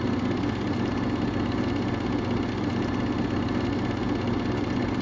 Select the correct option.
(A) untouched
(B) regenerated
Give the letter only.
A